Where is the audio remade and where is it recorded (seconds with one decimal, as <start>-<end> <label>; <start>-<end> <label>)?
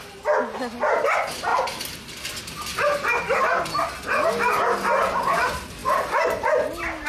0.0-7.1 recorded